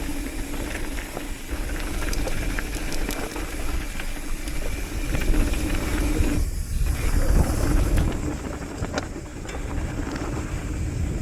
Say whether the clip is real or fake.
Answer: real